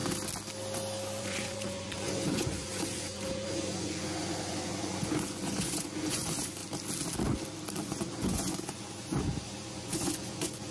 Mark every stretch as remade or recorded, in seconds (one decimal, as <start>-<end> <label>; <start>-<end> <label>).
0.0-1.2 recorded; 1.2-6.6 remade; 6.6-7.8 recorded; 7.8-10.7 remade